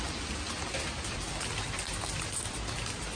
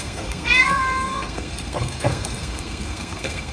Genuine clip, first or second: first